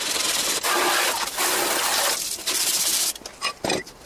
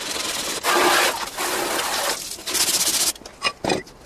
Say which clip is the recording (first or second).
second